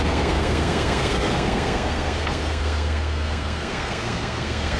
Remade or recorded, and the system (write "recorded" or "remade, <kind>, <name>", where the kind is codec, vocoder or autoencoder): remade, codec, SNAC